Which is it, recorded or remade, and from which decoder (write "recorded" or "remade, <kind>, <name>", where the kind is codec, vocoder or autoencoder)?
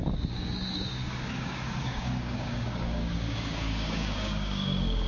remade, codec, DAC